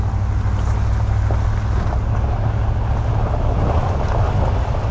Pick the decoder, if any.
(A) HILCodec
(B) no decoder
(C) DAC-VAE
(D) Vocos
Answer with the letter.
B